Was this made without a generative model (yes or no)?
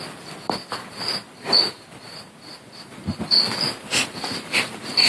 yes